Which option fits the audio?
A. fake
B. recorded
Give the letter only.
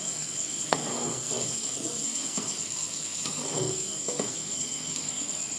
A